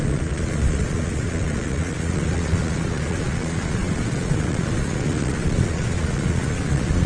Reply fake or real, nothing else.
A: fake